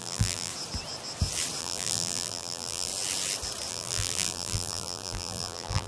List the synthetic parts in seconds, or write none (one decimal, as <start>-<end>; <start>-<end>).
0.0-0.5; 1.6-2.9; 3.7-5.9